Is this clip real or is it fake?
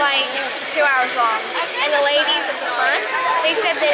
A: real